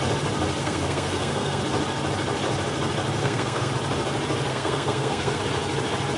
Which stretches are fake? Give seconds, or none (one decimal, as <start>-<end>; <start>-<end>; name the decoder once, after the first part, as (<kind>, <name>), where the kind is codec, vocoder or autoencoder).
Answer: 0.6-1.6 (codec, SNAC); 3.2-3.7; 4.5-5.4

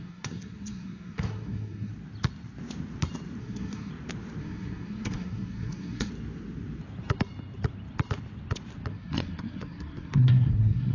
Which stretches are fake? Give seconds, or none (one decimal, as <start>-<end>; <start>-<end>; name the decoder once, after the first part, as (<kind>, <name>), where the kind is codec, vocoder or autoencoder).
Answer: 0.0-1.9 (codec, SNAC); 3.4-3.9; 4.4-6.1; 8.9-10.9